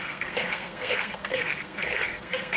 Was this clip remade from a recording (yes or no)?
yes